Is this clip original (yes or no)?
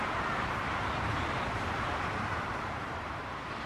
no